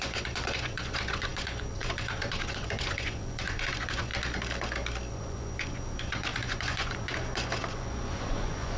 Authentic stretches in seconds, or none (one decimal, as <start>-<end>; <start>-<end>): 4.1-5.1